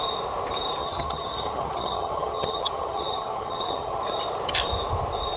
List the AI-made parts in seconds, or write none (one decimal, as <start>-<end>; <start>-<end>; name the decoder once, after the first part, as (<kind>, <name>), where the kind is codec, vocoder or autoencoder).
0.8-4.0 (vocoder, HiFi-GAN)